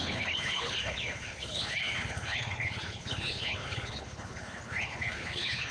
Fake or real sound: fake